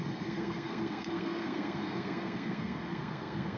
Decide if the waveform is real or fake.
fake